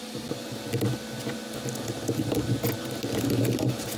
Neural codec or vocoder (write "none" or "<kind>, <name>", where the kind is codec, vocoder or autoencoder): none